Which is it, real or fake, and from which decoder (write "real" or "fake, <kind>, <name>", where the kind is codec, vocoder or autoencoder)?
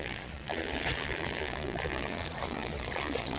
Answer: fake, vocoder, Vocos